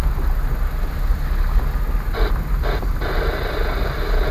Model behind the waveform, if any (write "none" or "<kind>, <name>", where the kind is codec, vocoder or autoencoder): none